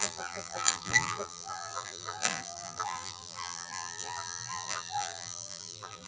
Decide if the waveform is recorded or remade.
remade